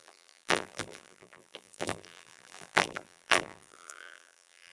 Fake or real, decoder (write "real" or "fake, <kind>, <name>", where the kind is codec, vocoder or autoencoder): fake, vocoder, BigVGAN v2